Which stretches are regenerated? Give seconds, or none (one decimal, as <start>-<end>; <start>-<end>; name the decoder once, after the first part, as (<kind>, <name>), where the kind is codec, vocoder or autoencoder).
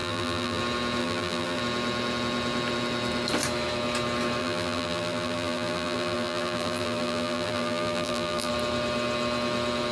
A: 0.0-0.6 (vocoder, BigVGAN v2); 1.0-1.6; 4.4-8.5